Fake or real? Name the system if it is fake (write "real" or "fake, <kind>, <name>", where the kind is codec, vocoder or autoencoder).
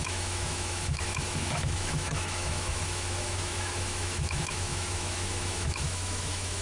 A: fake, autoencoder, DAC-VAE